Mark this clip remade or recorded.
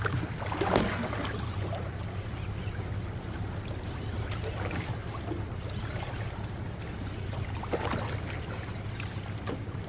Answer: recorded